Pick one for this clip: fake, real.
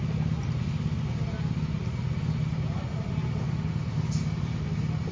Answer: real